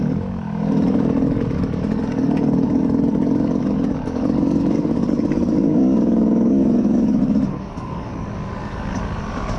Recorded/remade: remade